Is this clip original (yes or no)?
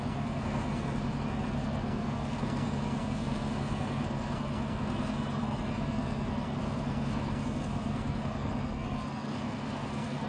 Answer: no